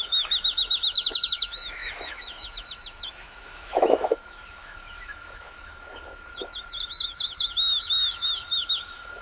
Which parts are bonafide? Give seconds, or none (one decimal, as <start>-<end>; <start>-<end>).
none